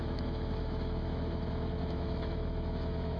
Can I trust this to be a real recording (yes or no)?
no